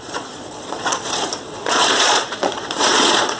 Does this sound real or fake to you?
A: fake